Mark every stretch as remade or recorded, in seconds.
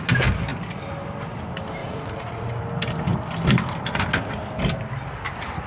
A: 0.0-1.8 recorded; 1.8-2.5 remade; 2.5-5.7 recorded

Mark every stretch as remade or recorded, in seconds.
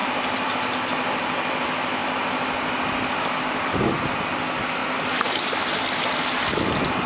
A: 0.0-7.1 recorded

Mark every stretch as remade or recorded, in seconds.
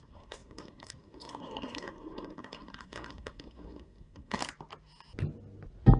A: 0.0-4.4 remade; 4.4-6.0 recorded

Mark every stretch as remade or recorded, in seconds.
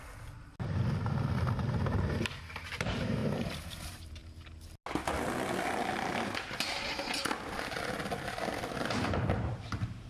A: 0.0-2.6 recorded; 2.6-3.2 remade; 3.2-3.7 recorded; 3.7-4.2 remade; 4.2-8.7 recorded; 8.7-10.1 remade